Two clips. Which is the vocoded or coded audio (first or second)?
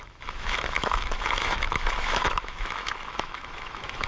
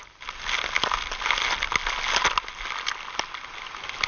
first